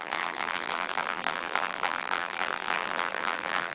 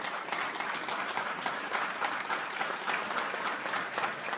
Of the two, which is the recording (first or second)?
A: second